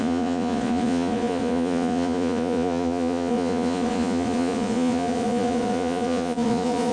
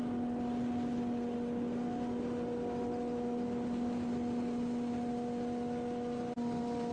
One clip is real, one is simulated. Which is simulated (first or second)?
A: first